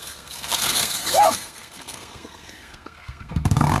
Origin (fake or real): fake